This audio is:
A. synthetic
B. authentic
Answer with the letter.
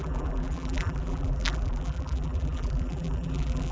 A